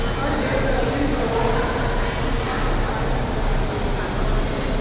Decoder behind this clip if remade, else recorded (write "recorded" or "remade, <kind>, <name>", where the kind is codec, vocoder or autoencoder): recorded